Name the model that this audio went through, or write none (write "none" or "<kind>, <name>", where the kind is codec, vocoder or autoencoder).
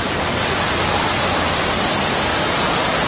vocoder, BigVGAN v2